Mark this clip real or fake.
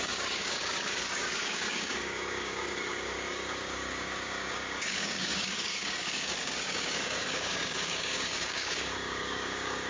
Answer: fake